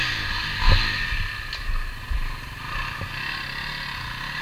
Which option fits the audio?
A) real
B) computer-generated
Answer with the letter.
A